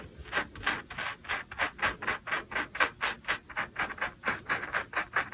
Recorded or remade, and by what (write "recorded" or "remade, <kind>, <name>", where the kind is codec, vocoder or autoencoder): recorded